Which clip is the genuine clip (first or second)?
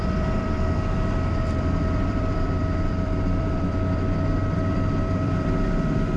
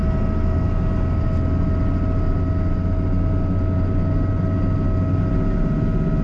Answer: second